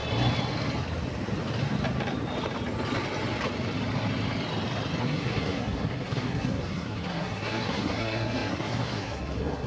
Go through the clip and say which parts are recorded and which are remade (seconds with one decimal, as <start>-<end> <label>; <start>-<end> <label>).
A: 0.0-5.0 recorded; 5.0-9.7 remade